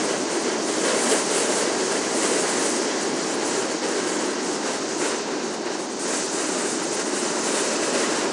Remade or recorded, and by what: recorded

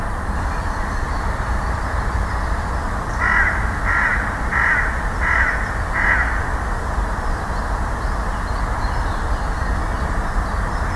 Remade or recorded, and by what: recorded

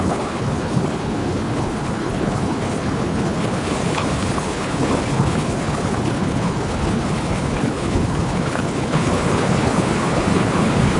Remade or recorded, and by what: remade, codec, HILCodec